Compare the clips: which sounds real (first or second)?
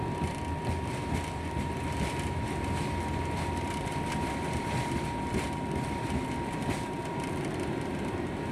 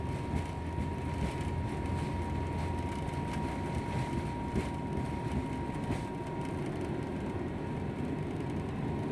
second